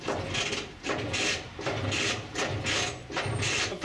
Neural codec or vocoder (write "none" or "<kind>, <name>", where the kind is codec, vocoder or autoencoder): none